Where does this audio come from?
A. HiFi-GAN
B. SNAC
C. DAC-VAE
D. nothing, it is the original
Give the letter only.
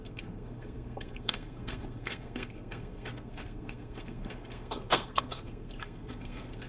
B